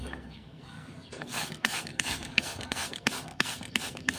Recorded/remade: remade